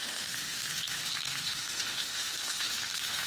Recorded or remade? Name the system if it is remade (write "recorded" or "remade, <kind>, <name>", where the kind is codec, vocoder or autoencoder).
remade, autoencoder, DAC-VAE